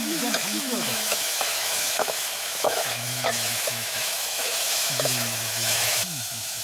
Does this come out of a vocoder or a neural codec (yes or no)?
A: yes